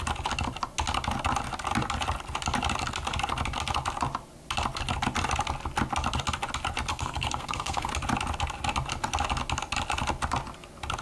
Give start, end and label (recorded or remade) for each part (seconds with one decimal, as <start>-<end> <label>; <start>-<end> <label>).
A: 0.0-6.9 recorded; 6.9-7.9 remade; 7.9-11.0 recorded